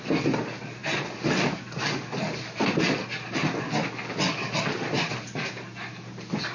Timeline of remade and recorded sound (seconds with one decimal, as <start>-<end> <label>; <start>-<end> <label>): 0.0-6.5 recorded

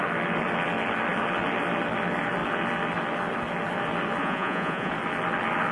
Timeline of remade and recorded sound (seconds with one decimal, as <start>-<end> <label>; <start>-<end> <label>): 0.0-4.2 recorded; 4.2-4.9 remade; 4.9-5.7 recorded

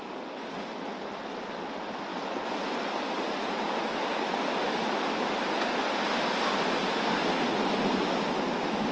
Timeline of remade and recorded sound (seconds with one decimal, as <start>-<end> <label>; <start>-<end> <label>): 0.0-8.9 recorded

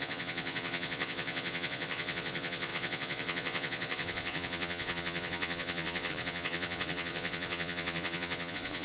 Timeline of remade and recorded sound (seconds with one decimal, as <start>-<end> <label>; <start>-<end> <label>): 0.0-8.8 remade